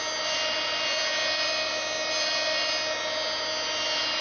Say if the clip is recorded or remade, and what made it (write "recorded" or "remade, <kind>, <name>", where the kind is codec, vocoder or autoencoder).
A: recorded